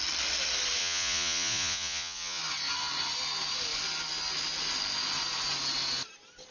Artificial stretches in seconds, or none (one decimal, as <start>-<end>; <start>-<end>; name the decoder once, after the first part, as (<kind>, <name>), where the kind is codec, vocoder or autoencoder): 0.8-2.4 (vocoder, Vocos)

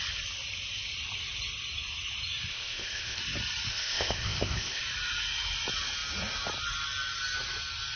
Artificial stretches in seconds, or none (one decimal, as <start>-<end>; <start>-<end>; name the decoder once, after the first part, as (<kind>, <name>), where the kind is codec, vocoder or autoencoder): 2.5-3.2 (codec, ZipCodec); 3.7-4.8

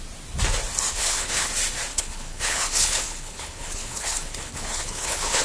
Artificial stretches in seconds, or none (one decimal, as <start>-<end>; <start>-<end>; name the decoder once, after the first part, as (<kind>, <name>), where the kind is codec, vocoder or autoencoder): 0.9-1.5 (codec, HILCodec); 1.9-5.4

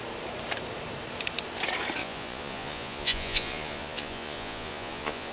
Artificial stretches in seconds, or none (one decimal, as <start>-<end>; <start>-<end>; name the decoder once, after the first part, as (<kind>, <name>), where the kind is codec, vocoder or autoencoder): 2.0-5.3 (vocoder, Vocos)

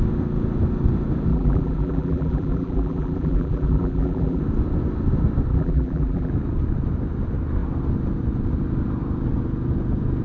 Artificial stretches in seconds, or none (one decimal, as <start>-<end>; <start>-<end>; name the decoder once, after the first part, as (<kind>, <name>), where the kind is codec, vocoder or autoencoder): 1.3-4.4 (vocoder, BigVGAN v2); 5.5-6.3

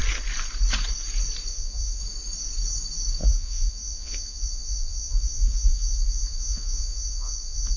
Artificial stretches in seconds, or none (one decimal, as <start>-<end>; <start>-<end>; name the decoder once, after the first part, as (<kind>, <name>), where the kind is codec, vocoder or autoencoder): 1.5-2.0 (vocoder, Vocos); 3.2-7.8